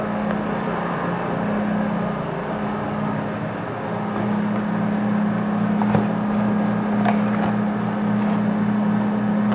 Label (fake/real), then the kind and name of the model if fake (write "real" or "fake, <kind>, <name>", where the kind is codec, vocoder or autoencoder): real